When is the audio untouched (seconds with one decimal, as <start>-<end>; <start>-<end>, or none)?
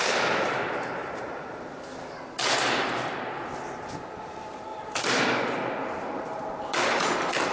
0.0-7.5